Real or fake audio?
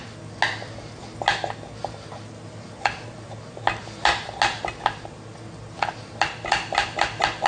real